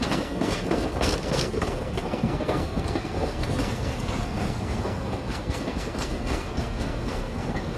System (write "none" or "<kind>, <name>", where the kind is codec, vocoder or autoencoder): codec, SNAC